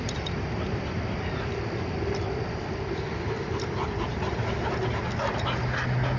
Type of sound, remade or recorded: remade